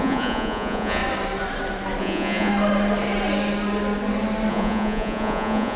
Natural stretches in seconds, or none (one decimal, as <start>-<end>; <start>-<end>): 1.0-2.0; 2.5-4.5